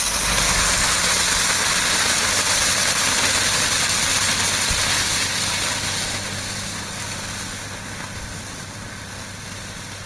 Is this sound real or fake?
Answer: real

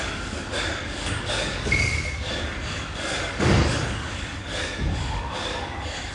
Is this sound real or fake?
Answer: fake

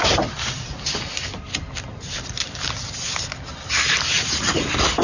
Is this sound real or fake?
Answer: fake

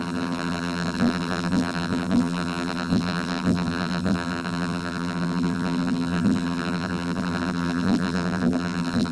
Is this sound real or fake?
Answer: fake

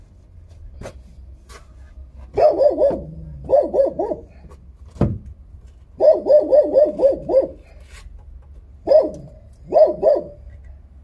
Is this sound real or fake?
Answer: real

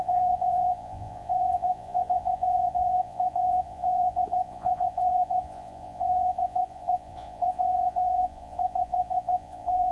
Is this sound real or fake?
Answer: fake